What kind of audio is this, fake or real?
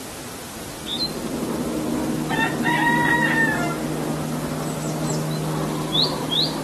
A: real